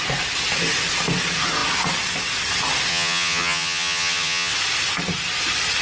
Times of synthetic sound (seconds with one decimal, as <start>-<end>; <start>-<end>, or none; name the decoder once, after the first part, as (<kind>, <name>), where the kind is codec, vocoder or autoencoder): 2.9-4.5 (vocoder, HiFi-GAN)